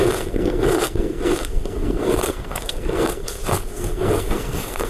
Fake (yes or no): yes